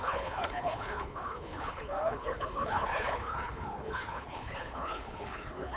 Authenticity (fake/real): fake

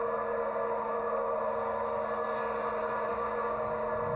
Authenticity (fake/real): real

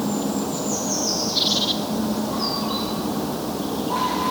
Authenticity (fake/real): real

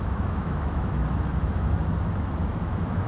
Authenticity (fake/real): fake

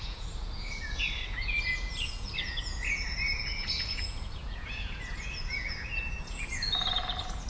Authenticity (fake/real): fake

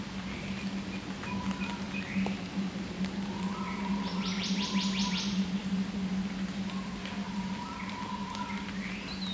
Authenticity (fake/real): real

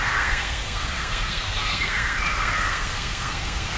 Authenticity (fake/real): fake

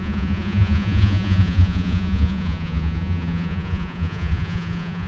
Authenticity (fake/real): fake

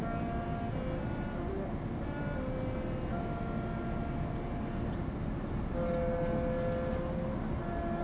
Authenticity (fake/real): real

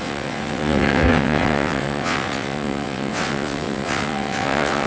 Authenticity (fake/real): fake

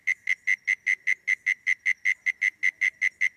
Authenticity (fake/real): real